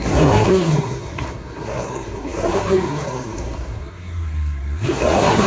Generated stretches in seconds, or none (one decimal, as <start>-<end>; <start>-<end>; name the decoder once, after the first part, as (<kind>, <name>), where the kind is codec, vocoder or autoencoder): 0.0-5.5 (codec, SNAC)